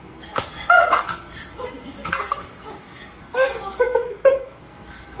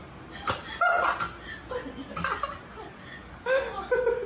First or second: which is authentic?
second